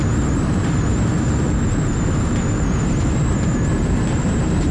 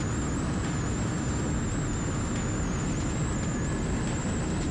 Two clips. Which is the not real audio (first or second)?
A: first